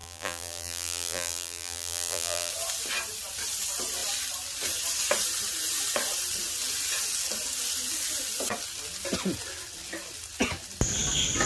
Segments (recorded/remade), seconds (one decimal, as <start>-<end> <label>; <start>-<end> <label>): 0.0-2.5 remade; 2.5-11.5 recorded